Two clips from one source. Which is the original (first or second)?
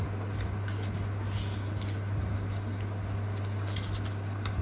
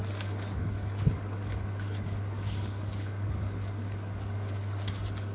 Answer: first